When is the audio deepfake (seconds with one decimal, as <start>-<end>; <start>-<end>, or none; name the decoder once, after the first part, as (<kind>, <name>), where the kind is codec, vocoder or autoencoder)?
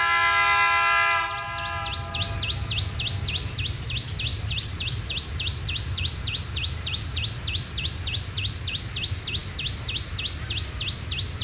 4.3-8.8 (vocoder, BigVGAN v2)